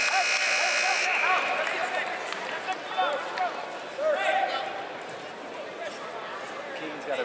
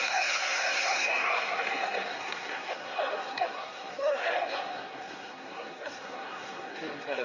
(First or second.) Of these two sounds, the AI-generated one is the second